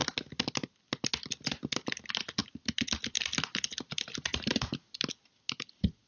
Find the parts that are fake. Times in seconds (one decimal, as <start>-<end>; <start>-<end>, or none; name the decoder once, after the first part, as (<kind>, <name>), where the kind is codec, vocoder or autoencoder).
none